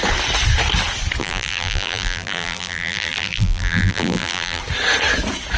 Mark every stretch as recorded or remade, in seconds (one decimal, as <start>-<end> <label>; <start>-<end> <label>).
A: 0.0-1.2 recorded; 1.2-4.6 remade; 4.6-5.6 recorded